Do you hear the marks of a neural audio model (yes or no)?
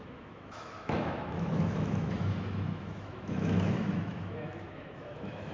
yes